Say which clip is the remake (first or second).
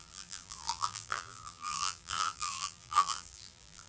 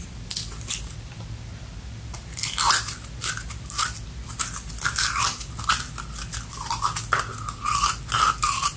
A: first